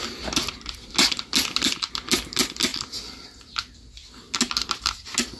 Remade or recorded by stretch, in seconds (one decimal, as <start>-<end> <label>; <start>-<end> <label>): 0.0-5.4 recorded